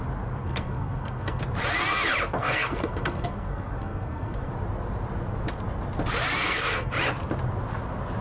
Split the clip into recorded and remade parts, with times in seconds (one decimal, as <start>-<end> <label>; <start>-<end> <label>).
0.0-0.4 recorded; 0.4-1.4 remade; 1.4-2.4 recorded; 2.4-4.5 remade; 4.5-6.4 recorded; 6.4-6.9 remade; 6.9-8.2 recorded